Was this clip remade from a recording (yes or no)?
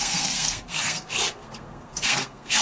yes